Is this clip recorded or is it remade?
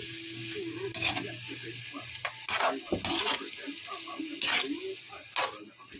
recorded